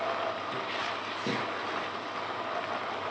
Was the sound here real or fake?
real